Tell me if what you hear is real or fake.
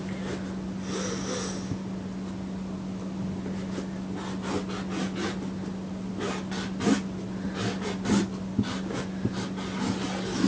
real